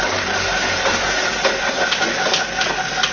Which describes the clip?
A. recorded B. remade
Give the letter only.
A